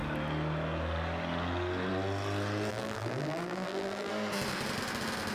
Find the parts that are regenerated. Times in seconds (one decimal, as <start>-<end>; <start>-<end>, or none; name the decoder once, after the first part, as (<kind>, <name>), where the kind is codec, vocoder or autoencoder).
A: 2.7-4.1 (vocoder, BigVGAN v2)